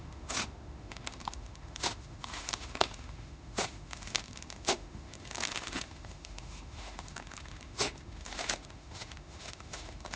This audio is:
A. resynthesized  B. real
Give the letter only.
A